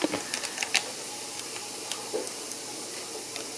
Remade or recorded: recorded